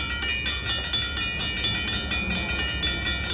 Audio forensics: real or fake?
real